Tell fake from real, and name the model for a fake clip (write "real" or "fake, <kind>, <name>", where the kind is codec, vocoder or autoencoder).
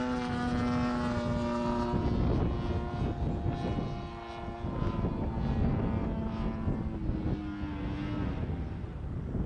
real